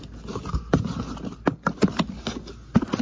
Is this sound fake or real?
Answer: real